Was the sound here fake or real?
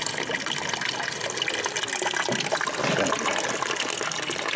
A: real